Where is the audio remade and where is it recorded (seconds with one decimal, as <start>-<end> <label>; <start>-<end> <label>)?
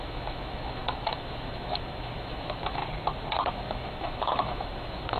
0.0-2.8 remade; 2.8-3.5 recorded; 3.5-5.2 remade